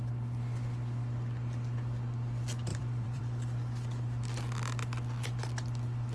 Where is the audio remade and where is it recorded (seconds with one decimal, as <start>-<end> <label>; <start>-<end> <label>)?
0.0-2.7 recorded; 2.7-3.2 remade; 3.2-6.1 recorded

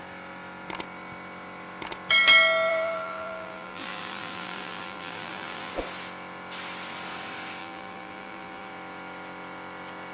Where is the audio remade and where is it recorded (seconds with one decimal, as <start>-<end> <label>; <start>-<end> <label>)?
0.0-2.7 recorded; 2.7-5.7 remade; 5.7-7.6 recorded; 7.6-8.7 remade; 8.7-10.1 recorded

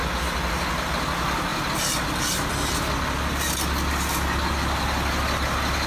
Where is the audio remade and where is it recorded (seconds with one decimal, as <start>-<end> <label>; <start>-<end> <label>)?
0.0-5.9 recorded

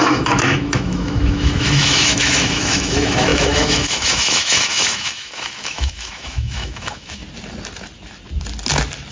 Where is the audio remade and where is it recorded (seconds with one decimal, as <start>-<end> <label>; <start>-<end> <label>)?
0.0-7.2 remade; 7.2-9.1 recorded

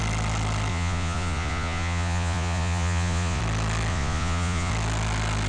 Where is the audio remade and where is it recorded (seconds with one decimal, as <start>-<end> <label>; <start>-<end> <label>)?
0.0-0.7 recorded; 0.7-3.4 remade; 3.4-3.9 recorded; 3.9-4.7 remade; 4.7-5.5 recorded